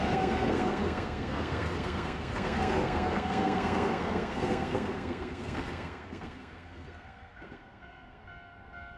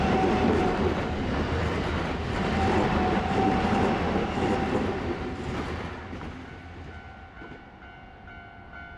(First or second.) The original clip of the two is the second